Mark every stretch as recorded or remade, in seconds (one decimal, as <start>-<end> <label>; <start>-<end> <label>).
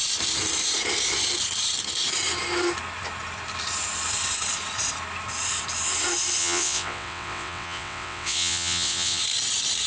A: 0.0-6.4 recorded; 6.4-9.2 remade; 9.2-9.9 recorded